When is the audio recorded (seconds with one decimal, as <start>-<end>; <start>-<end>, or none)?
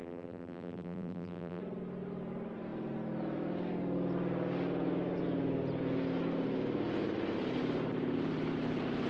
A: 1.6-9.1